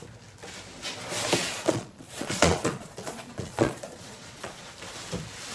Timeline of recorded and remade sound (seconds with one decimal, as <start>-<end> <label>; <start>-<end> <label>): 0.0-1.4 recorded; 1.4-4.7 remade; 4.7-5.5 recorded